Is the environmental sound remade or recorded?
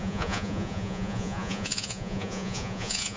remade